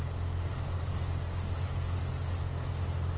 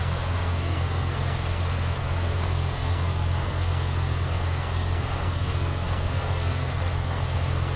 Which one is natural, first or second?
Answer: first